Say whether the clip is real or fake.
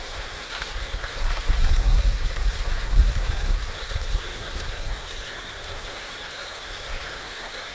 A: fake